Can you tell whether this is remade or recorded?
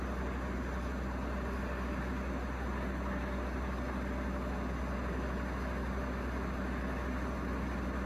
recorded